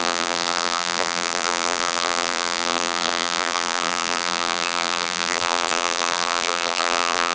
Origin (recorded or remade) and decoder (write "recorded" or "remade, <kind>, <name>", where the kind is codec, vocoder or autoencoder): remade, vocoder, BigVGAN v2